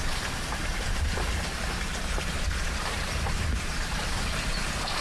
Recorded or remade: remade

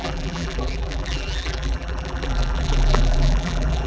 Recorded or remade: remade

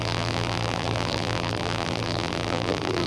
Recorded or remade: remade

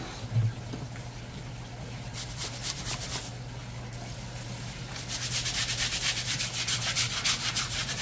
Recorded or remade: recorded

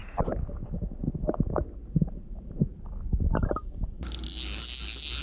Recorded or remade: recorded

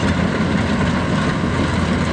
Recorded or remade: recorded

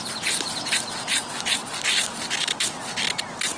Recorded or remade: recorded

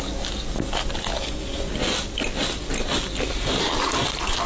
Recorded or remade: recorded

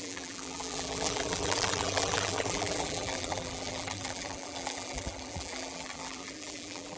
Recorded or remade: remade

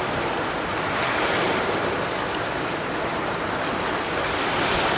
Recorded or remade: recorded